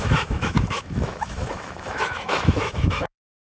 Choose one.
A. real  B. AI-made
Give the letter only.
B